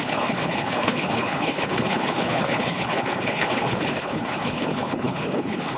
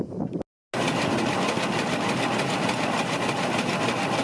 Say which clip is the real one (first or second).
second